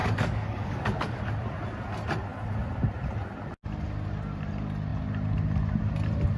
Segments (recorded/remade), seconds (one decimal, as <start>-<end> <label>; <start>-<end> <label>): 0.0-1.2 remade; 1.2-6.4 recorded